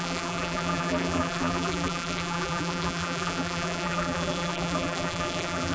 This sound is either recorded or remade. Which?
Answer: remade